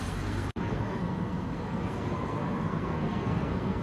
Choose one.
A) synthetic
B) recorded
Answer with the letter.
A